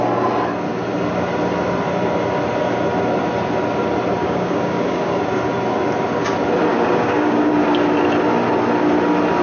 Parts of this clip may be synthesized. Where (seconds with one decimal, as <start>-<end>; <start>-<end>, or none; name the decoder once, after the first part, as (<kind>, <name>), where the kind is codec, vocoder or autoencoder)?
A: 4.2-5.2 (codec, DAC); 6.7-7.5